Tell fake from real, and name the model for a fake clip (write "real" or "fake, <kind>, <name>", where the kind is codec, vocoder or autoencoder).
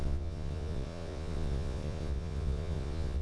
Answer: fake, vocoder, Vocos